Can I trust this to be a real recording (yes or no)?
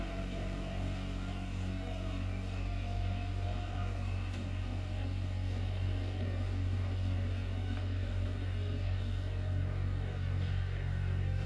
no